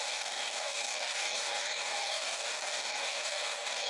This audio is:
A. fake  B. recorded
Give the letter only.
A